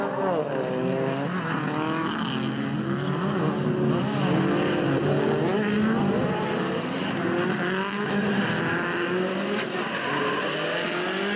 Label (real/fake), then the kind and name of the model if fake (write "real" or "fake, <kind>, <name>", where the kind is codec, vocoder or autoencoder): real